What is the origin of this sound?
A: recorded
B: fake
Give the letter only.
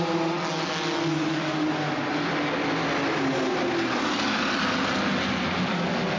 A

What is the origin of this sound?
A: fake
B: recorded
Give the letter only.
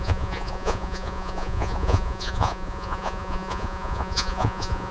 A